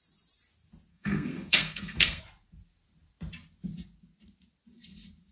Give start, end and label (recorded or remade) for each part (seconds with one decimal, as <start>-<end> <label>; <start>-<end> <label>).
0.0-0.9 recorded; 0.9-2.2 remade; 2.2-5.3 recorded

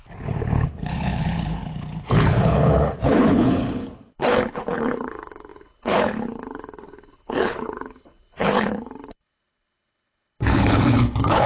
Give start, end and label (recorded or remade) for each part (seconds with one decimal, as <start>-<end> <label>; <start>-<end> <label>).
0.0-11.5 remade

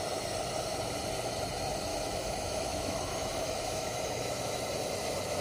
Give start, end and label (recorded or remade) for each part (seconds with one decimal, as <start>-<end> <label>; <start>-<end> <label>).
0.0-1.9 recorded; 1.9-4.6 remade; 4.6-5.4 recorded